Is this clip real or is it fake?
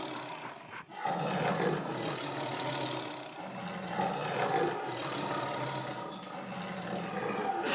real